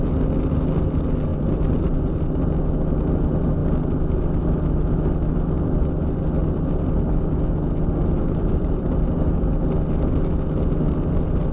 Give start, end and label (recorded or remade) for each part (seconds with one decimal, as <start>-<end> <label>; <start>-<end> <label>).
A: 0.0-1.3 recorded; 1.3-2.4 remade; 2.4-6.4 recorded; 6.4-7.1 remade; 7.1-8.0 recorded; 8.0-9.1 remade; 9.1-11.5 recorded

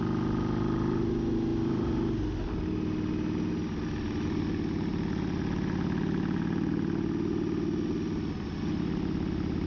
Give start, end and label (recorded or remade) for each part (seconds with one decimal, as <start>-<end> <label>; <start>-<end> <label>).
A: 0.0-1.5 recorded; 1.5-2.0 remade; 2.0-9.7 recorded

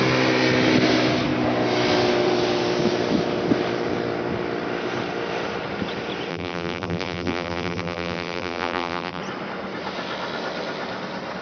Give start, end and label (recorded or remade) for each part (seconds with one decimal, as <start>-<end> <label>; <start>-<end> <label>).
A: 0.0-6.3 recorded; 6.3-9.2 remade; 9.2-11.4 recorded

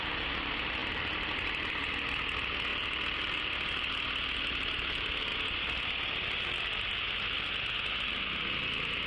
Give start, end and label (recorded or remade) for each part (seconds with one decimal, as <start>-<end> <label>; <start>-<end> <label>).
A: 0.0-0.8 recorded; 0.8-1.8 remade; 1.8-9.1 recorded

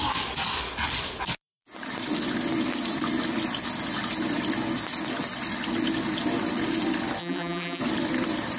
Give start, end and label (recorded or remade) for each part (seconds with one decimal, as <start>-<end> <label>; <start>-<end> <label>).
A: 0.0-7.2 recorded; 7.2-7.8 remade; 7.8-8.6 recorded